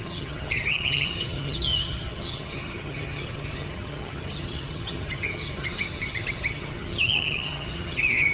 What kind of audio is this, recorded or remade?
remade